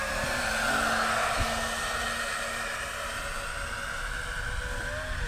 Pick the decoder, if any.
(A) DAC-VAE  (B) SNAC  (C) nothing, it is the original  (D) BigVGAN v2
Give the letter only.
C